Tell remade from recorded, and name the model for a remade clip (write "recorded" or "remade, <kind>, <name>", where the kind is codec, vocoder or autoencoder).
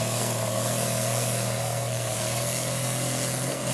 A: remade, codec, SNAC